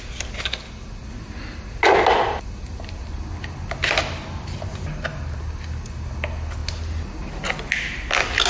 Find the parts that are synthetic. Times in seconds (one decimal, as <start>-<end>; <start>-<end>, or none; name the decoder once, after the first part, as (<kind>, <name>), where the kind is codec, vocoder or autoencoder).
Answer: none